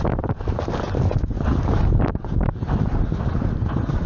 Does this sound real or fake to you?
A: real